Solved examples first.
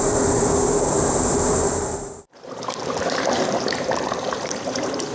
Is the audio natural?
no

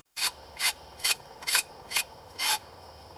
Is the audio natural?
no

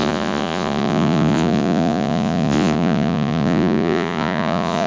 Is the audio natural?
no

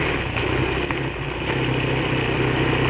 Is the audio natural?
yes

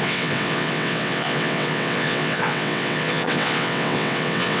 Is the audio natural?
no